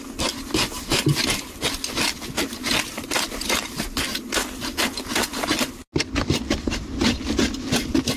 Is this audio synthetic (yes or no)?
no